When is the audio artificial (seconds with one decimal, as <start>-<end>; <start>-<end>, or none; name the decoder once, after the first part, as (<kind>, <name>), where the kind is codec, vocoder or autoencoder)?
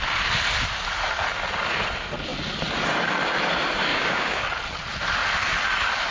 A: 3.9-4.4 (codec, DAC)